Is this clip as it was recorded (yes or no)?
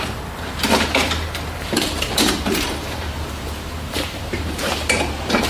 no